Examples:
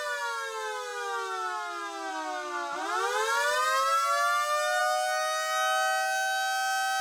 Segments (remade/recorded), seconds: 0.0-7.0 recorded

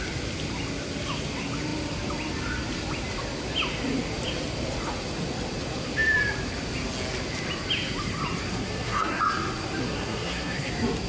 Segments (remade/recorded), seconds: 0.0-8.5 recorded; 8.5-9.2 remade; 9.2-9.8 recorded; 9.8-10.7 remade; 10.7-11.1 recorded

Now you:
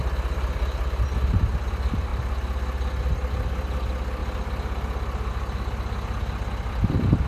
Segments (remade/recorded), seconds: 0.0-7.3 recorded